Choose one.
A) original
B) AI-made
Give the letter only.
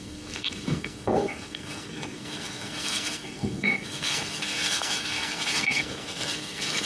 B